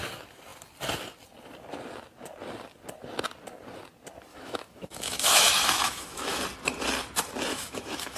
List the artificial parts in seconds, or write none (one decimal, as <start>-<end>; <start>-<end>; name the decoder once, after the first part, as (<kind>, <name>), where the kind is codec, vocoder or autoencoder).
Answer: 4.3-6.4 (autoencoder, DAC-VAE); 7.5-8.2